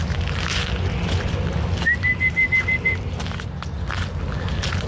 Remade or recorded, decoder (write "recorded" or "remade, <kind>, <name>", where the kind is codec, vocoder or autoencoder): recorded